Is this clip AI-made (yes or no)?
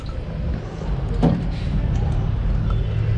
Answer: no